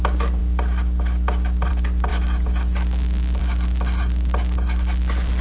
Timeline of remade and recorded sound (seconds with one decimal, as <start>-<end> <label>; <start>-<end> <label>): 0.0-5.4 recorded